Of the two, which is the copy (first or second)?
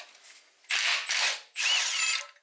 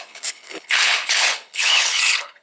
second